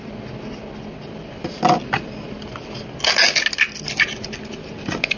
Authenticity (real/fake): real